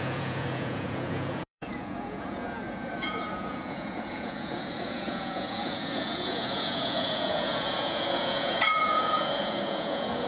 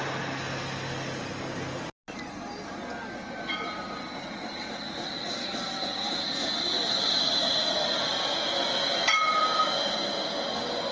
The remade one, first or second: first